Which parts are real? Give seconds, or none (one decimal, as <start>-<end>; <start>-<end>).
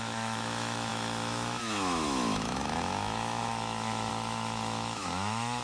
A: none